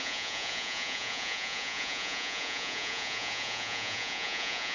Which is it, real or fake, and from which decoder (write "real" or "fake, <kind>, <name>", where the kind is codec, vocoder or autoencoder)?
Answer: fake, vocoder, Vocos